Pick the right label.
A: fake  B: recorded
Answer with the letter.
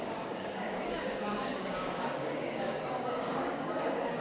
A